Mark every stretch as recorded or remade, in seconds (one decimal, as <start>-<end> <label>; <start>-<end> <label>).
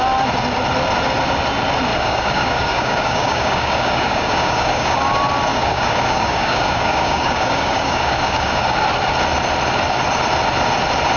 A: 0.0-1.9 recorded; 1.9-5.0 remade; 5.0-5.5 recorded; 5.5-8.8 remade; 8.8-11.2 recorded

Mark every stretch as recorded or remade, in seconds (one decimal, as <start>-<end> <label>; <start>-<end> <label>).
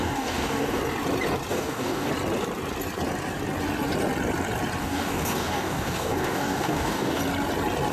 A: 0.0-0.8 remade; 0.8-1.5 recorded; 1.5-2.1 remade; 2.1-4.8 recorded; 4.8-7.2 remade; 7.2-7.9 recorded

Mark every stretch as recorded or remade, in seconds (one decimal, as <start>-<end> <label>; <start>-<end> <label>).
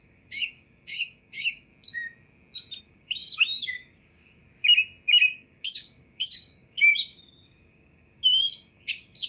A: 0.0-1.7 remade; 1.7-2.8 recorded; 2.8-4.4 remade; 4.4-5.3 recorded; 5.3-9.3 remade